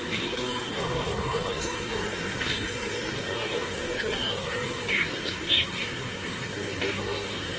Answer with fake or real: fake